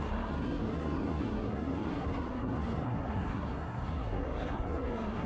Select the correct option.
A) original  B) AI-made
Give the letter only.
B